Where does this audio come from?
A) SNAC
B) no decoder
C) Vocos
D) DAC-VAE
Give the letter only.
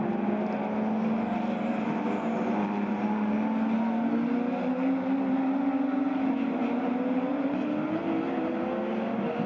B